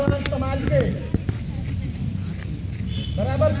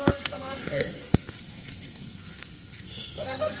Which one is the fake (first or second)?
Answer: second